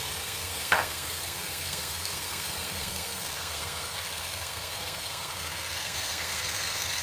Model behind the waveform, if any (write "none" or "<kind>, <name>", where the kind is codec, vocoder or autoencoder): codec, SNAC